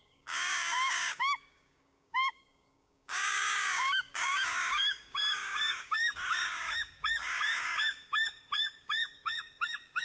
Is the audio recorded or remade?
remade